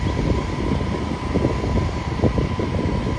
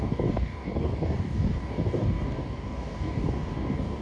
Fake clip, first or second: second